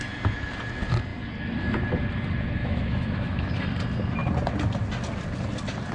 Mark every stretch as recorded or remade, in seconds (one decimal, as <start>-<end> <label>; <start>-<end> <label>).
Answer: 0.0-2.6 recorded; 2.6-3.6 remade; 3.6-5.9 recorded